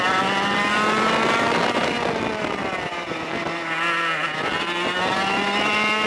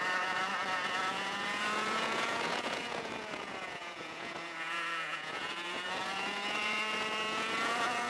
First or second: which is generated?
second